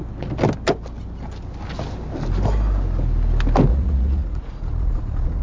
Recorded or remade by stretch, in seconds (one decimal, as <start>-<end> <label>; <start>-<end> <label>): 0.0-3.7 recorded; 3.7-5.4 remade